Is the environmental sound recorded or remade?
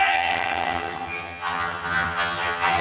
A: remade